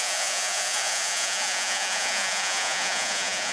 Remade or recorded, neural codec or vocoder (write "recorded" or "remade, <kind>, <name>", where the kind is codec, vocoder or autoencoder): remade, vocoder, Vocos